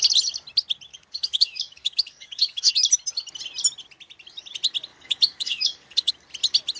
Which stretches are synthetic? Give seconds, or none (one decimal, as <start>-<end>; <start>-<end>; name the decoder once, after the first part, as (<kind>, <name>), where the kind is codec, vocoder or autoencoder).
0.9-2.7 (codec, DAC); 4.9-6.1